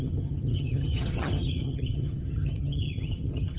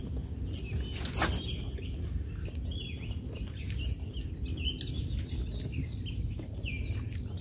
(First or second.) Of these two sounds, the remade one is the first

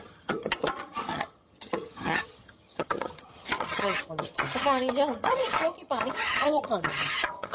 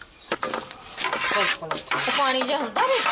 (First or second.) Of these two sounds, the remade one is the first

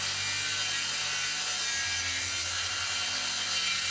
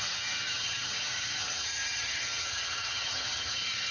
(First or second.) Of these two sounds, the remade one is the second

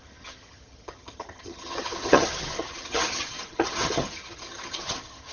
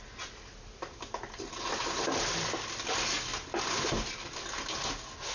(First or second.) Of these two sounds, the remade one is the first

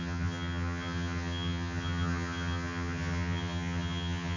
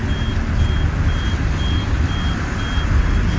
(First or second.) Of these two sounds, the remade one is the first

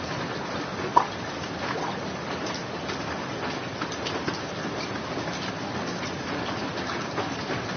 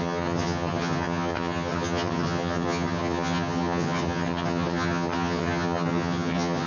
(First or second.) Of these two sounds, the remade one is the second